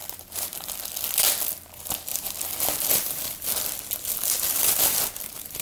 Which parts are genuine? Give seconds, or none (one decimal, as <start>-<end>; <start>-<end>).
0.7-5.6